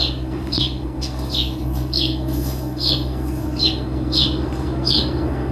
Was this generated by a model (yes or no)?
yes